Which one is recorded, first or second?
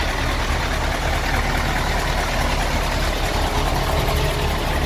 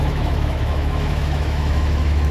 first